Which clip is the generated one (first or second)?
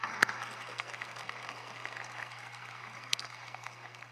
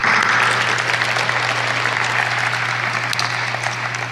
first